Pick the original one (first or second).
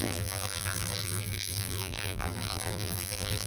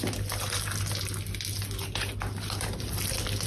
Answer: second